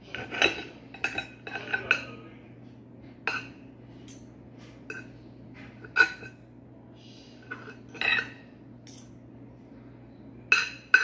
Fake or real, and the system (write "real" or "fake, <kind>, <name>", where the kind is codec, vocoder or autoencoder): real